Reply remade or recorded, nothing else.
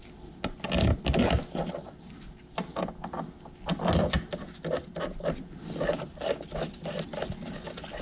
recorded